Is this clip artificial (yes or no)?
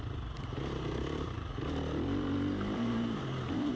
yes